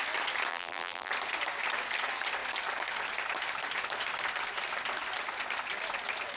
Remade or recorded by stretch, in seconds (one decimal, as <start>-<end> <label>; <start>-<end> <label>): 0.0-0.5 recorded; 0.5-1.1 remade; 1.1-6.4 recorded